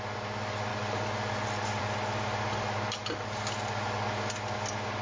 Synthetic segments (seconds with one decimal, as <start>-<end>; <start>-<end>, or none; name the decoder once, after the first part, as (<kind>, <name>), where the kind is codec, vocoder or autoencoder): none